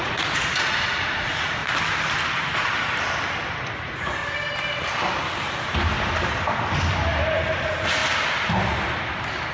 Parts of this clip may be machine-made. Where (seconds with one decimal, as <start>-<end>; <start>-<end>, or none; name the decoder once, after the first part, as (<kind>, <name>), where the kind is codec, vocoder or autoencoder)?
0.0-1.6 (vocoder, Vocos); 3.7-4.2; 7.6-8.0